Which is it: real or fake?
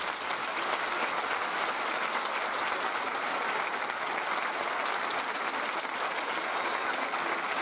real